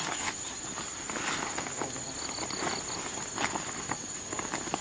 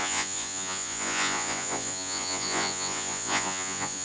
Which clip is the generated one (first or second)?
second